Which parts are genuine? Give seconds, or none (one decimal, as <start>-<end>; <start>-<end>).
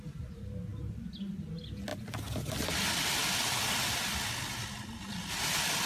0.0-5.9